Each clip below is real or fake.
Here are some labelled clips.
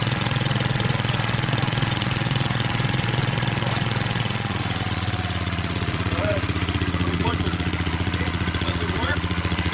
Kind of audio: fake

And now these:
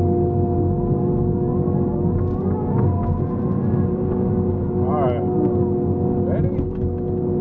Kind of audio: real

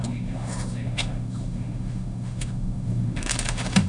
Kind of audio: fake